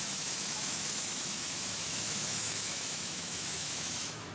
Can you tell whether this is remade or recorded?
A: remade